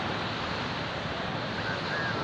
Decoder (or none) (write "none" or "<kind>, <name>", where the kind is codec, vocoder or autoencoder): none